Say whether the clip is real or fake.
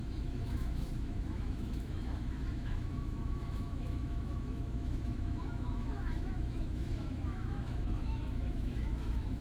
fake